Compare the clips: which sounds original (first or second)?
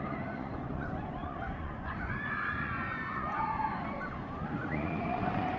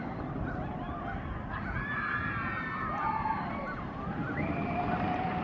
second